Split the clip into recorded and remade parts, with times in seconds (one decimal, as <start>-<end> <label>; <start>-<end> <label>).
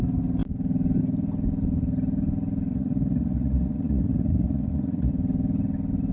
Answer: 0.0-2.7 recorded; 2.7-5.1 remade; 5.1-6.1 recorded